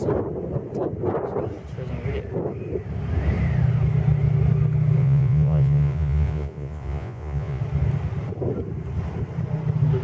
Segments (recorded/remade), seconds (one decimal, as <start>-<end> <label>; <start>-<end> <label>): 0.0-5.0 recorded; 5.0-7.6 remade; 7.6-10.0 recorded